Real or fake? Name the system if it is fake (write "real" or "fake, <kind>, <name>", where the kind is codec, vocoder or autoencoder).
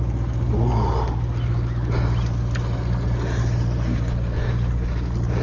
real